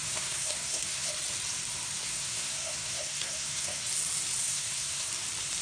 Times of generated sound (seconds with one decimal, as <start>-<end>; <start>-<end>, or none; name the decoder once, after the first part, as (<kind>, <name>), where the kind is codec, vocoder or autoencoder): 0.0-1.1 (codec, SNAC); 2.1-3.8; 4.4-5.1